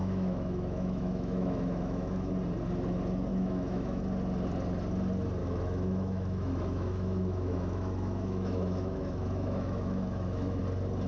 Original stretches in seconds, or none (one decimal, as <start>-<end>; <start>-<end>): 2.3-3.3; 4.0-5.4; 10.6-11.1